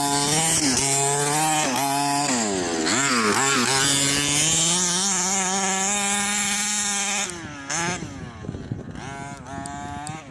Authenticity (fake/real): real